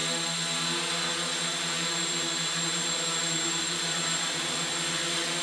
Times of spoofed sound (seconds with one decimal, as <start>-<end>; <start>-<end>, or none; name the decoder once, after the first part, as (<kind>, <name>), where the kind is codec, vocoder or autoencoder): 1.5-4.7 (vocoder, BigVGAN v2)